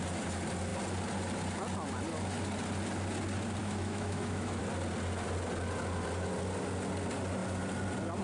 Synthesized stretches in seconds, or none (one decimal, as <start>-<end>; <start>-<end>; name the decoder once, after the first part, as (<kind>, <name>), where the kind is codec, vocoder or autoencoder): 3.6-4.6 (autoencoder, DAC-VAE)

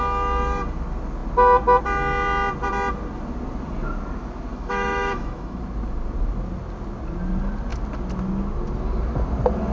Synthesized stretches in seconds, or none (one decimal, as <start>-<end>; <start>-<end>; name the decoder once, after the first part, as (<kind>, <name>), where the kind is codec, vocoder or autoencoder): 4.5-5.6 (autoencoder, DAC-VAE)

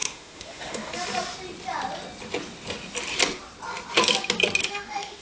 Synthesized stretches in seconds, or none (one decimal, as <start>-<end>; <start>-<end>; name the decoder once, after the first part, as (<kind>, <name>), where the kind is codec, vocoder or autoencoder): 0.0-0.9 (autoencoder, DAC-VAE); 4.6-5.2

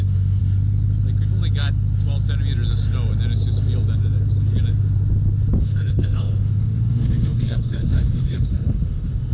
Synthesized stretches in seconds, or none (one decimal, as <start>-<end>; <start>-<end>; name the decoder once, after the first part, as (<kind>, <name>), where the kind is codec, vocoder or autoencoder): 0.0-0.4 (autoencoder, DAC-VAE); 5.6-9.3

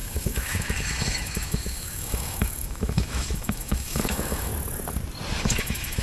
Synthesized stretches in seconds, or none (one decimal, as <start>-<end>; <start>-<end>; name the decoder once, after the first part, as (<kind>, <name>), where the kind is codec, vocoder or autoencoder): 0.0-4.5 (autoencoder, DAC-VAE); 5.4-6.0

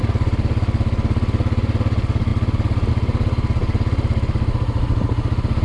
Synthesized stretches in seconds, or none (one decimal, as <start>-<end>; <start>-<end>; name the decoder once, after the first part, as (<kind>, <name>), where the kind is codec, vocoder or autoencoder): none

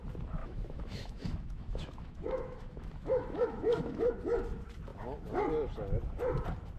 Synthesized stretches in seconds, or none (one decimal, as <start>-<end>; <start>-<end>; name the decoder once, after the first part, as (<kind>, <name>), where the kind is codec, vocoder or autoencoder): 0.4-4.1 (autoencoder, DAC-VAE)

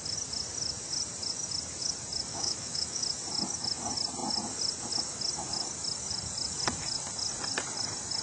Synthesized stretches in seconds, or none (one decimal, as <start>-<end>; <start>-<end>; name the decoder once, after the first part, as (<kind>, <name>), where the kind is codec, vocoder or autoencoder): 2.3-3.0 (autoencoder, DAC-VAE)